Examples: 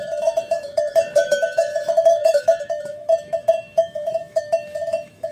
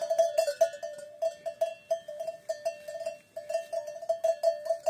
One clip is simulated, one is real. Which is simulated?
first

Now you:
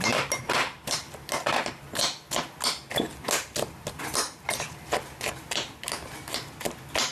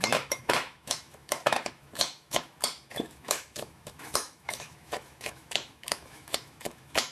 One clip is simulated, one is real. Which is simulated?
second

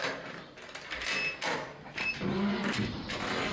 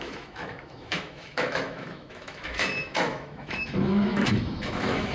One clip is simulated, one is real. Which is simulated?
second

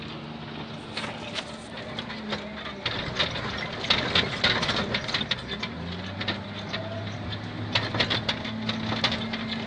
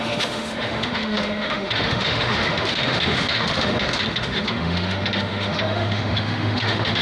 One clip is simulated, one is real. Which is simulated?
second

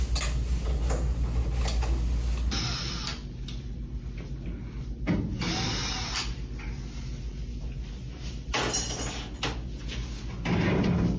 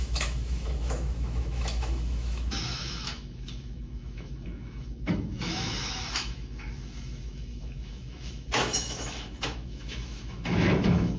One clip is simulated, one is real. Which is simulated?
second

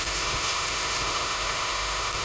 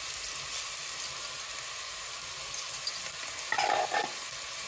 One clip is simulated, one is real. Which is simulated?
first